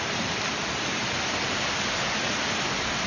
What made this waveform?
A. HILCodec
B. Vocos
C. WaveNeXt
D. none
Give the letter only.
D